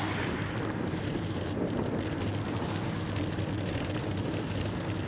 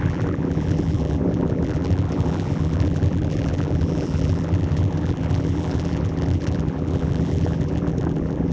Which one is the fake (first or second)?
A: second